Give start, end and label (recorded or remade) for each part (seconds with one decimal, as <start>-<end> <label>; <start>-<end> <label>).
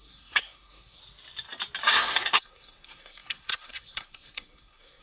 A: 0.0-1.0 remade; 1.0-1.9 recorded; 1.9-5.0 remade